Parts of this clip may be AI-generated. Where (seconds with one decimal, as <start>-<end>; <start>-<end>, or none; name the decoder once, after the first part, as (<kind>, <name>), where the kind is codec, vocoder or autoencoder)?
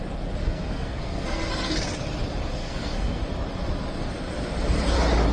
0.4-1.5 (codec, SNAC); 2.6-3.2